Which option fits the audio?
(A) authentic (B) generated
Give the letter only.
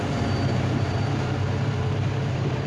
B